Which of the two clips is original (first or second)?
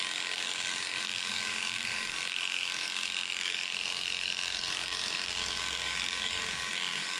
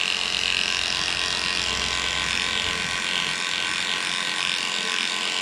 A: second